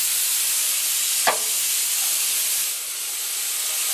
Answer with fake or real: real